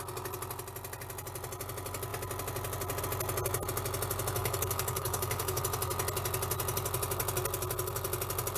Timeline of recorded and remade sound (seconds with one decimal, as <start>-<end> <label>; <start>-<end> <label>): 0.0-4.4 recorded; 4.4-5.6 remade; 5.6-8.6 recorded